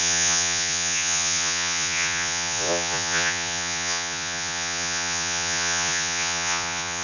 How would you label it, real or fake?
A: fake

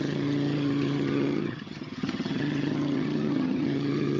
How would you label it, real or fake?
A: fake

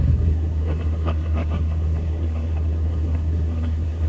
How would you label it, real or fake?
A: fake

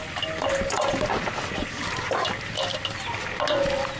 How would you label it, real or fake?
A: real